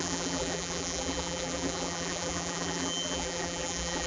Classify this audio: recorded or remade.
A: remade